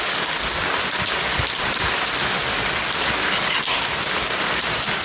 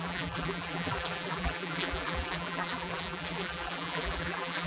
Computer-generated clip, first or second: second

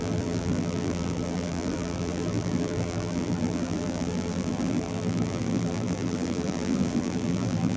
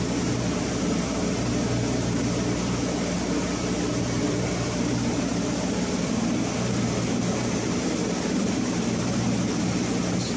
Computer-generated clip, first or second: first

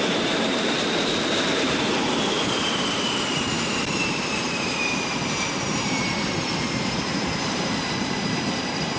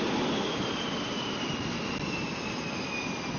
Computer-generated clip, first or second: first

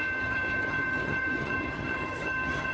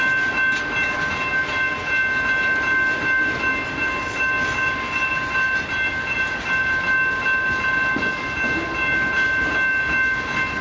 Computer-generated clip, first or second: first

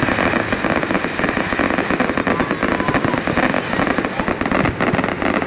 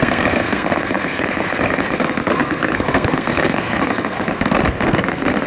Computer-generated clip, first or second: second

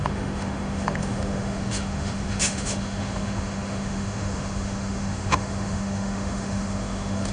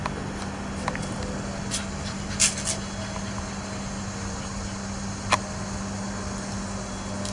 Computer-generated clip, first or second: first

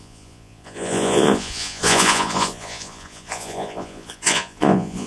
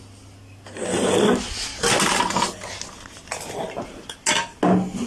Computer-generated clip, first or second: first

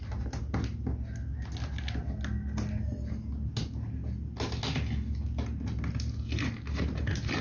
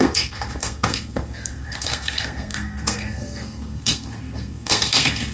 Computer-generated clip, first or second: second